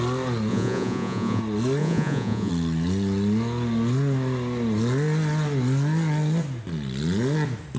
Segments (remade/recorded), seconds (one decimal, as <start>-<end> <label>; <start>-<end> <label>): 0.0-0.5 recorded; 0.5-1.4 remade; 1.4-1.8 recorded; 1.8-2.5 remade; 2.5-7.8 recorded